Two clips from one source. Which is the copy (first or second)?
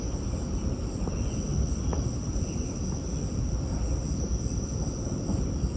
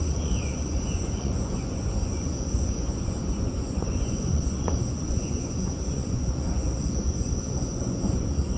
second